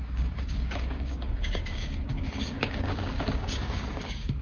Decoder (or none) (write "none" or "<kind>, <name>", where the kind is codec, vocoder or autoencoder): codec, DAC